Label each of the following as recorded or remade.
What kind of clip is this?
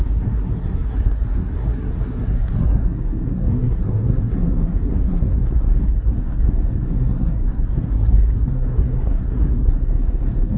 remade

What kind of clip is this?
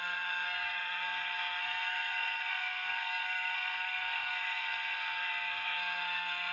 remade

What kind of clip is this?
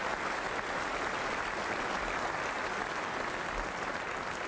recorded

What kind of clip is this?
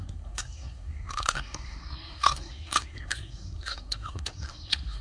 remade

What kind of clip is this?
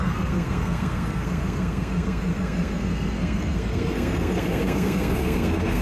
remade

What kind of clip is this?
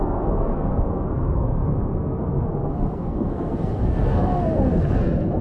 remade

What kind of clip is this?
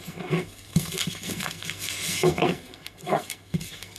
remade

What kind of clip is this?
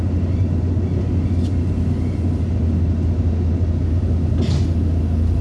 recorded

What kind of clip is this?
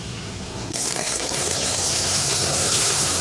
remade